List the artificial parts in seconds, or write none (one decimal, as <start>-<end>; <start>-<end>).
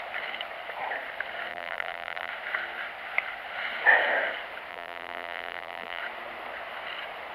1.5-2.3; 4.7-6.0